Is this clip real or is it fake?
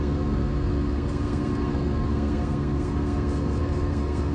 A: fake